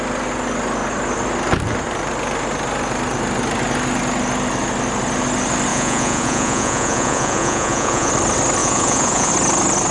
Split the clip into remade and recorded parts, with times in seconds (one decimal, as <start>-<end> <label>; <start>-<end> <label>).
0.0-5.7 recorded; 5.7-8.1 remade; 8.1-8.6 recorded; 8.6-9.3 remade; 9.3-9.9 recorded